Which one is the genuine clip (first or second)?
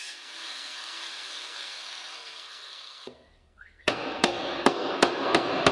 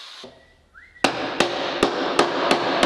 second